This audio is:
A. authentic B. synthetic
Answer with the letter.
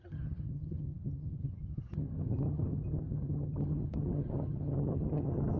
B